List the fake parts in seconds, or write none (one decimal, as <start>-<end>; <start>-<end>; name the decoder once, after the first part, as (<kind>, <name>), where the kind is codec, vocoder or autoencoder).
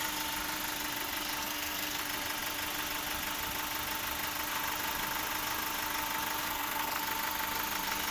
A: 1.4-2.0 (codec, SNAC); 6.4-7.0